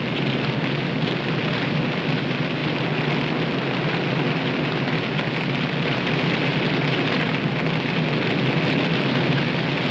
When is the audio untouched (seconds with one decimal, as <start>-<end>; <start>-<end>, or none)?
0.0-9.9